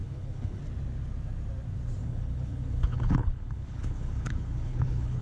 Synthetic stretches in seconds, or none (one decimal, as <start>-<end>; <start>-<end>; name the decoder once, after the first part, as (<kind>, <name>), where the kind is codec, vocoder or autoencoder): 0.0-0.6 (codec, HILCodec); 2.0-5.2